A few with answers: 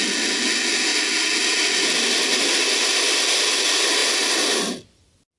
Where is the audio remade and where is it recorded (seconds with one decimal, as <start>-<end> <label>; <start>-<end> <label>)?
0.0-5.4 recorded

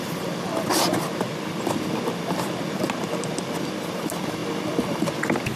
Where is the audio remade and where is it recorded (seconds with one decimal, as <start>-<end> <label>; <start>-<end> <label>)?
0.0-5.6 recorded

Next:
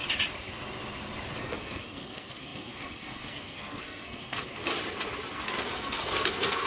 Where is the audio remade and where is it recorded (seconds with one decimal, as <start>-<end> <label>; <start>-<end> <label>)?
0.0-1.4 recorded; 1.4-4.7 remade; 4.7-5.3 recorded; 5.3-6.7 remade

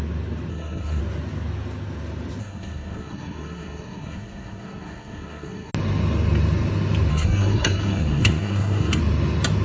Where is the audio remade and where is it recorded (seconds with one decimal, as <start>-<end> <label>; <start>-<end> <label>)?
0.0-0.5 recorded; 0.5-1.0 remade; 1.0-2.4 recorded; 2.4-5.7 remade; 5.7-7.1 recorded; 7.1-9.0 remade; 9.0-9.6 recorded